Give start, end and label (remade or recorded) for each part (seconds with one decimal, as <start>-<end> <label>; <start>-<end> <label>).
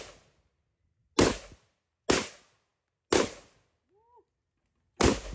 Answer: 0.0-5.3 recorded